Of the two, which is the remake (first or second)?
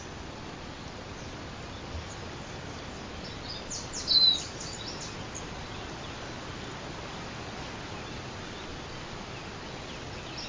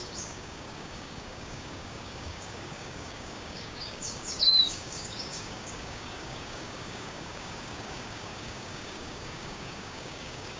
second